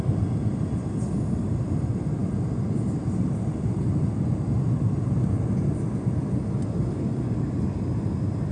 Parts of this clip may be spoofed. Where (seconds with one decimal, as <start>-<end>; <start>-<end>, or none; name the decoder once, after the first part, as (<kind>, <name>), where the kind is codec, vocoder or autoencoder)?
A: none